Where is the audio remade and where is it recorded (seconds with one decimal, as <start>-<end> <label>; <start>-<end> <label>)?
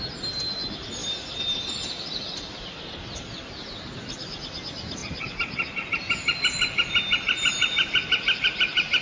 0.0-9.0 recorded